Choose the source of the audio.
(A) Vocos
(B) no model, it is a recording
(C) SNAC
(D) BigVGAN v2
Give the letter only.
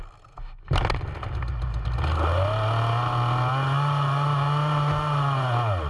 B